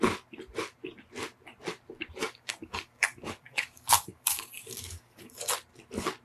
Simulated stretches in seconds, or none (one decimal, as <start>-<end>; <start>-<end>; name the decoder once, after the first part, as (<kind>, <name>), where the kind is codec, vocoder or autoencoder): 2.2-5.5 (codec, DAC)